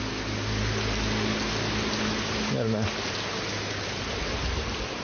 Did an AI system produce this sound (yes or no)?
no